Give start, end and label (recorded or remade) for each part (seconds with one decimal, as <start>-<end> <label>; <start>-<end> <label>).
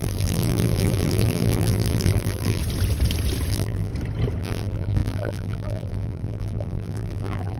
0.0-2.6 remade; 2.6-3.5 recorded; 3.5-3.9 remade; 3.9-4.4 recorded; 4.4-7.6 remade